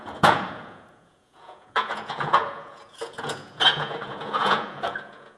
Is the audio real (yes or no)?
no